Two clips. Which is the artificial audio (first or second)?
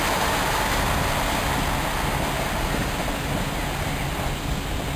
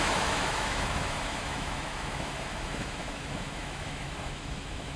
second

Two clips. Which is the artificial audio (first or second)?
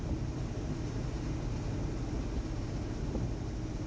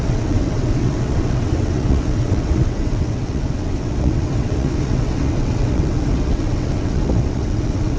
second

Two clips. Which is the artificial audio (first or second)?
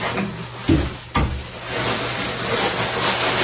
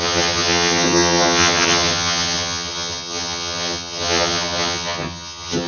second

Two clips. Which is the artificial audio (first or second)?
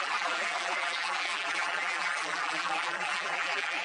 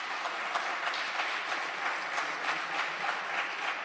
first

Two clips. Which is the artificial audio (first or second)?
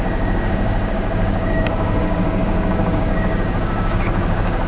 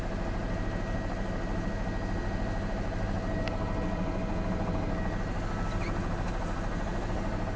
first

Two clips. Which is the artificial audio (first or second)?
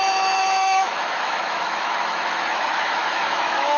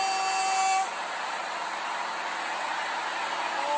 first